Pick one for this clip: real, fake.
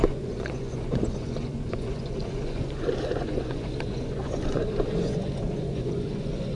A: fake